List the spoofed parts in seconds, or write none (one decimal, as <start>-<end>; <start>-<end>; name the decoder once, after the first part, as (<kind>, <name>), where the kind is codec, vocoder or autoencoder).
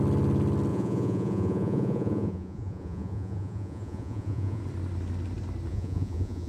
0.7-4.6 (vocoder, Vocos); 5.7-6.5